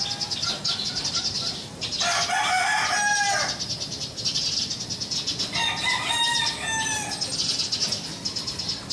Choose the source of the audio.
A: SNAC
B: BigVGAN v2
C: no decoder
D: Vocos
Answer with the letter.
C